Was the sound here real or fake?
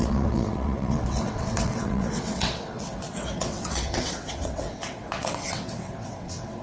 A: fake